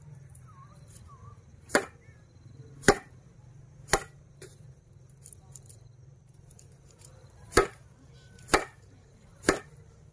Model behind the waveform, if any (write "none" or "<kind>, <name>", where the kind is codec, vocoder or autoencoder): vocoder, BigVGAN v2